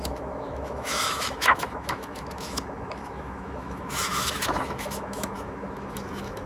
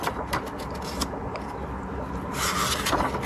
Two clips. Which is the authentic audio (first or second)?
second